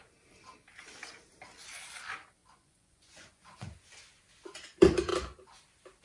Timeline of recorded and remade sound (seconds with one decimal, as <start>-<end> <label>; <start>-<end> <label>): 0.0-2.4 recorded; 2.4-3.7 remade; 3.7-6.0 recorded